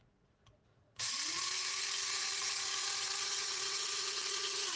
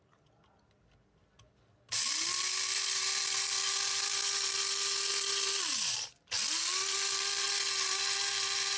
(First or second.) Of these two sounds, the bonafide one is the second